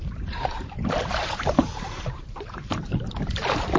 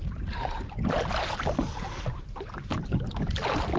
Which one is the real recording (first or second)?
second